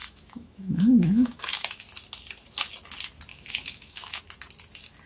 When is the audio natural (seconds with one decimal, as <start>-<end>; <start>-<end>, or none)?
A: 1.8-3.3; 4.2-5.1